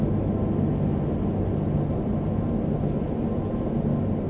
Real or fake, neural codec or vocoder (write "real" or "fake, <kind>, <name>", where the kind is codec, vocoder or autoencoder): real